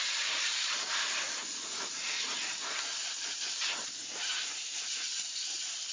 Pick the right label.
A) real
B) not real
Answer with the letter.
B